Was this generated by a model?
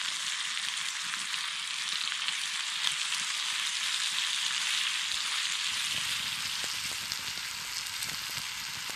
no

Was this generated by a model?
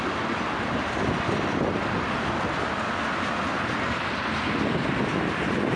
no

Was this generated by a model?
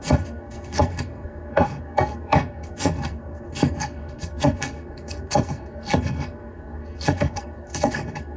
yes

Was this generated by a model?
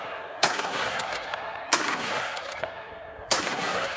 yes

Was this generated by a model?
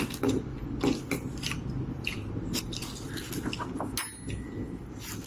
no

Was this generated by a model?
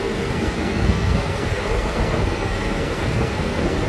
yes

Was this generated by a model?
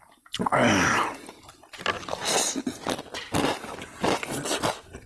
no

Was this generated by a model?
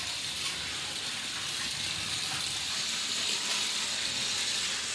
no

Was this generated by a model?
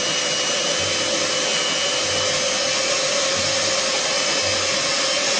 no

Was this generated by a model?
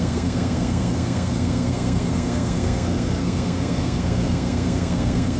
yes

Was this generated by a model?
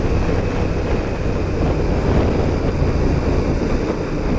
no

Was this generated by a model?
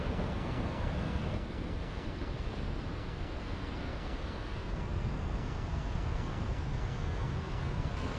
yes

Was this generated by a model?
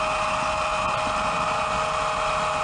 no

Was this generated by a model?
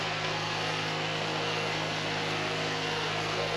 yes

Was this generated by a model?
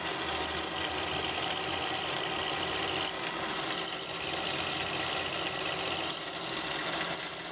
no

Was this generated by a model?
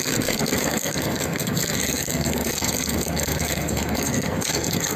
yes